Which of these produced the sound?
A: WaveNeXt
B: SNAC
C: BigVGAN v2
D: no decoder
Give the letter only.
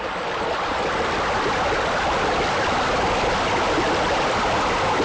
D